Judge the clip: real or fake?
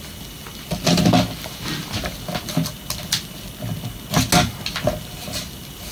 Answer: real